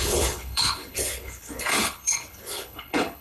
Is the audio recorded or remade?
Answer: remade